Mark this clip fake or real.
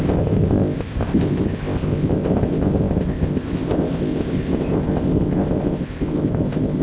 fake